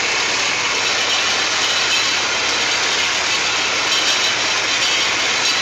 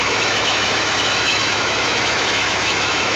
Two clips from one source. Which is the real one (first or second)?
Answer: first